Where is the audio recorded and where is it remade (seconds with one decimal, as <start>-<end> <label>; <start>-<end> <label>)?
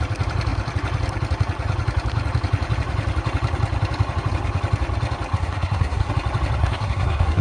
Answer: 0.0-5.3 recorded; 5.3-6.1 remade; 6.1-6.6 recorded; 6.6-7.4 remade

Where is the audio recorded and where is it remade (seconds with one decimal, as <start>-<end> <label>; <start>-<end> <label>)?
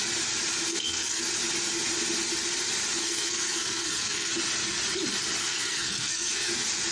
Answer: 0.0-0.7 recorded; 0.7-1.2 remade; 1.2-3.0 recorded; 3.0-4.3 remade; 4.3-5.4 recorded; 5.4-6.5 remade; 6.5-6.9 recorded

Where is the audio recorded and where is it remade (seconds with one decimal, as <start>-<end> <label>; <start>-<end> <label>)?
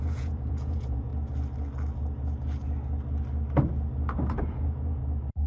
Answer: 0.0-1.1 remade; 1.1-4.4 recorded; 4.4-5.0 remade; 5.0-5.5 recorded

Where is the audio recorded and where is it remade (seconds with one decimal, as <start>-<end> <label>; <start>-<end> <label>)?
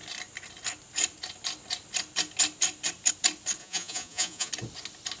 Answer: 0.0-3.6 recorded; 3.6-4.5 remade; 4.5-5.2 recorded